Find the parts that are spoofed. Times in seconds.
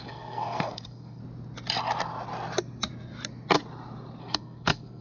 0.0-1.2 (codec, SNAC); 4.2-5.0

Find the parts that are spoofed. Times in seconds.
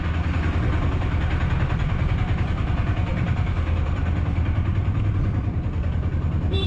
none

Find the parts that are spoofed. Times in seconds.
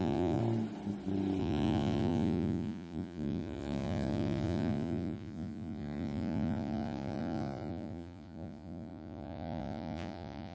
0.0-0.4 (vocoder, Vocos); 1.4-10.5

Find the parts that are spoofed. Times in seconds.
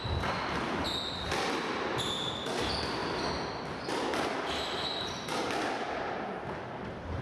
none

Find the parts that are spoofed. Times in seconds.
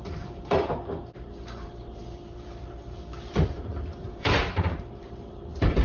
0.0-5.8 (vocoder, BigVGAN v2)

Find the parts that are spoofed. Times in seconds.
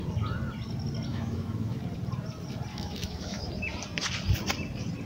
1.1-1.8 (autoencoder, DAC-VAE); 2.7-3.5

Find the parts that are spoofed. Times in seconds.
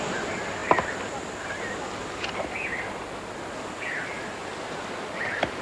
0.0-0.6 (vocoder, BigVGAN v2); 1.7-5.6